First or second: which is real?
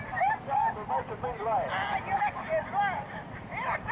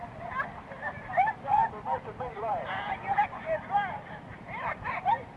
first